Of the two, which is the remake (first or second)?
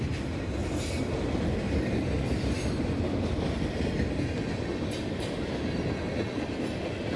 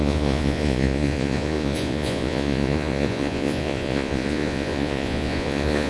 second